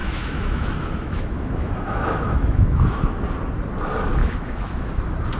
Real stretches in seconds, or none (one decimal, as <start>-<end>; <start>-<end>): 3.2-4.2; 5.0-5.4